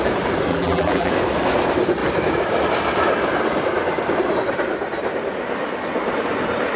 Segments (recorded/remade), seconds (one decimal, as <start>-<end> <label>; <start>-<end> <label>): 0.0-0.5 recorded; 0.5-1.1 remade; 1.1-6.8 recorded